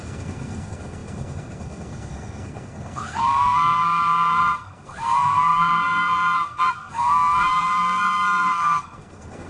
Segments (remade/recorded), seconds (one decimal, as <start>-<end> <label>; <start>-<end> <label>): 0.0-9.5 remade